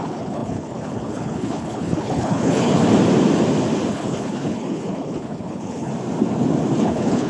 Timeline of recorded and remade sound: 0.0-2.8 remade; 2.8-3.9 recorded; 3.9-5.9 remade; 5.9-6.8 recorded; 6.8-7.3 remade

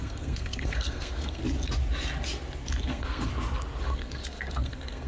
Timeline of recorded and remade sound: 0.0-1.4 remade; 1.4-2.8 recorded; 2.8-3.3 remade; 3.3-3.8 recorded; 3.8-5.1 remade

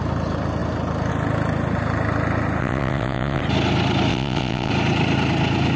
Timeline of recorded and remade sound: 0.0-2.6 recorded; 2.6-3.4 remade; 3.4-4.1 recorded; 4.1-4.7 remade; 4.7-5.8 recorded

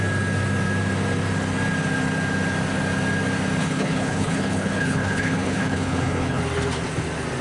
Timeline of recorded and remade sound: 0.0-3.6 recorded; 3.6-6.4 remade; 6.4-7.4 recorded